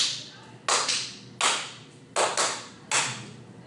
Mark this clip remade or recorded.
recorded